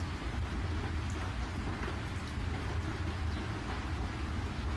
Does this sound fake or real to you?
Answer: real